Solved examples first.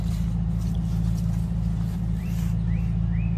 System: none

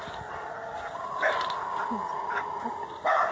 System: none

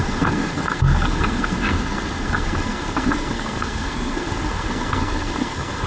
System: codec, SNAC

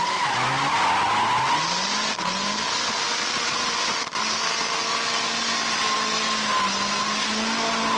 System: none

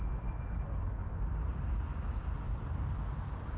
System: none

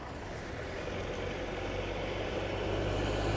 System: none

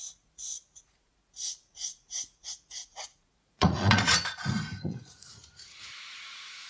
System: vocoder, Vocos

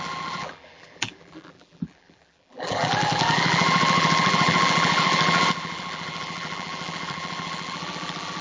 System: vocoder, BigVGAN v2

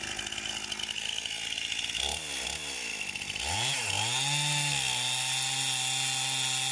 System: none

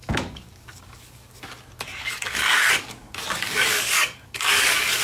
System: codec, DAC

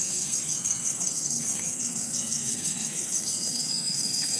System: codec, SNAC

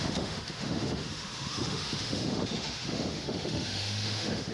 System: autoencoder, DAC-VAE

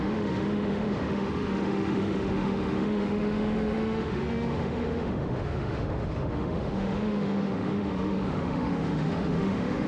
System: autoencoder, DAC-VAE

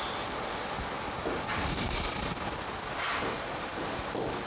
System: none